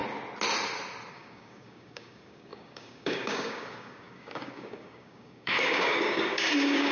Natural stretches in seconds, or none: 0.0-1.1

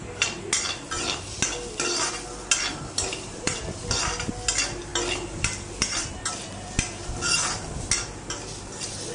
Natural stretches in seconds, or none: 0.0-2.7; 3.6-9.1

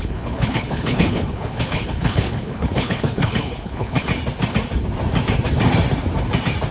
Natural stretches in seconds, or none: 4.1-6.7

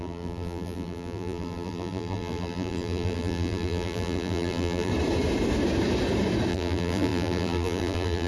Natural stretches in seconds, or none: 4.9-6.5

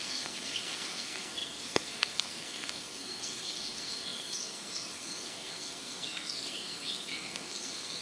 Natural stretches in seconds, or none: none

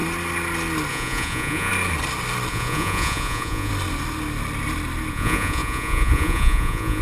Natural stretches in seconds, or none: 0.0-0.9; 1.7-2.5; 3.7-5.1